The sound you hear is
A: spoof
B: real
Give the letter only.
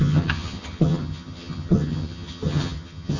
A